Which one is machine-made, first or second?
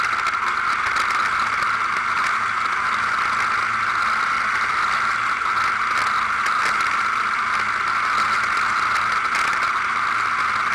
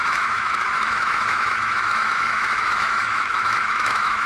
second